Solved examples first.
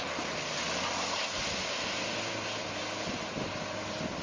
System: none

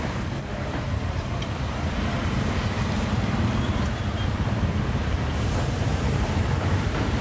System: vocoder, BigVGAN v2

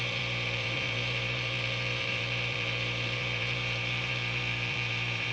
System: vocoder, BigVGAN v2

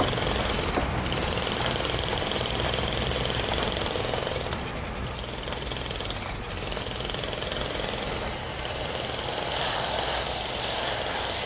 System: none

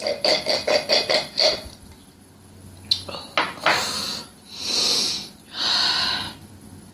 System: none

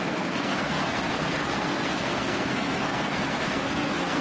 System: codec, SNAC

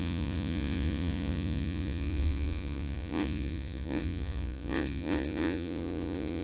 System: vocoder, Vocos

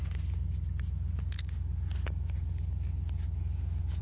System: none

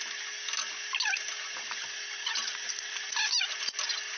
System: none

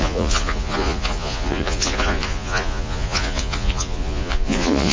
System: vocoder, Vocos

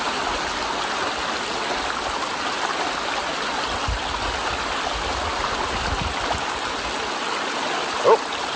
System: none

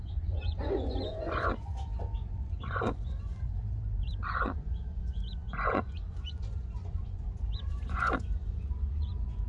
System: vocoder, Vocos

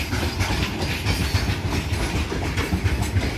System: none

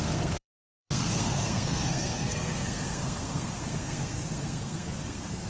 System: codec, SNAC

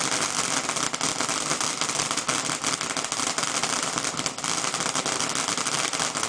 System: none